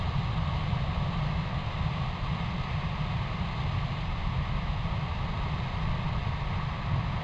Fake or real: real